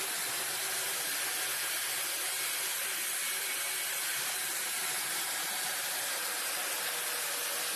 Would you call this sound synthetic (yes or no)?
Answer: no